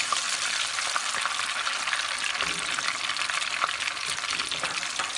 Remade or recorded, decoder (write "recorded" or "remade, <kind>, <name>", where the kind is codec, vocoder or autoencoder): recorded